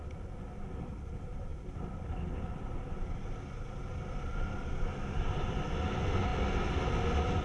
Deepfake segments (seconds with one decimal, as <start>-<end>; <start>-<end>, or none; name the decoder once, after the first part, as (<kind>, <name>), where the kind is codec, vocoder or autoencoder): none